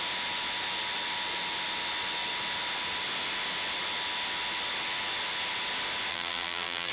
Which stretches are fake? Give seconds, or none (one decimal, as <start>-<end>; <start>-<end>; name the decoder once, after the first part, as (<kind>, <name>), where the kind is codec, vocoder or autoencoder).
6.1-6.9 (vocoder, BigVGAN v2)